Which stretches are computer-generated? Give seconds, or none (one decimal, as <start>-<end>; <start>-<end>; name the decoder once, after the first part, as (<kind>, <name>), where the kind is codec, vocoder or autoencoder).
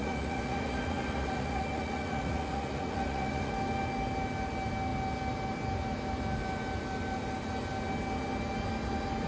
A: 0.0-3.5 (vocoder, Vocos)